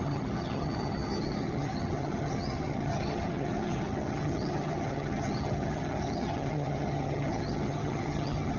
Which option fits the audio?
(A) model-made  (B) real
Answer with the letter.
A